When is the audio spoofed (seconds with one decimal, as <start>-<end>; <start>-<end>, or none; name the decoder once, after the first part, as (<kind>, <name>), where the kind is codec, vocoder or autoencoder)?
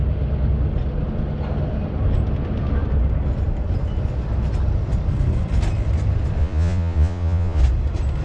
6.4-7.6 (vocoder, Vocos)